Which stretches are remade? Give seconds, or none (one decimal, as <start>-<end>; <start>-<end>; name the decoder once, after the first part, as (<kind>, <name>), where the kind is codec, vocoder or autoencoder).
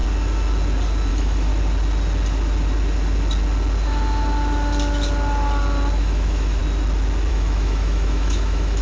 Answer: 1.1-1.5 (autoencoder, DAC-VAE); 6.0-6.6; 7.3-8.8